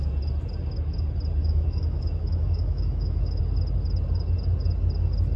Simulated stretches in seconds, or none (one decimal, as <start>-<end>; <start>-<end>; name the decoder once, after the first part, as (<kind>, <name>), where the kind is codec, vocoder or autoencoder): 1.4-3.4 (autoencoder, DAC-VAE)